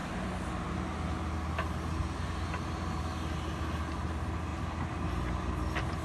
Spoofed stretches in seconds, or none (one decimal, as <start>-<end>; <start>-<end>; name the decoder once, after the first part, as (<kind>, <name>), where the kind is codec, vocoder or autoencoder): none